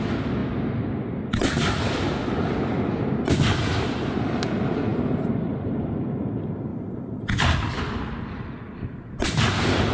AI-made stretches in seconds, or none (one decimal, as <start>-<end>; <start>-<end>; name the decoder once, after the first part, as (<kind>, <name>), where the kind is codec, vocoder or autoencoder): 6.7-7.8 (vocoder, BigVGAN v2)